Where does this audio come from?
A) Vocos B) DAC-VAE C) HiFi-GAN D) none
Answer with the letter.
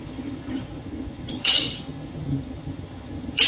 C